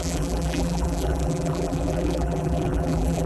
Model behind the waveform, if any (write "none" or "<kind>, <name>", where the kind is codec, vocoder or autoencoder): vocoder, BigVGAN v2